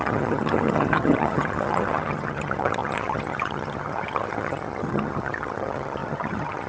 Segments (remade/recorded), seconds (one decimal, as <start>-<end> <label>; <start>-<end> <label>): 0.0-6.7 remade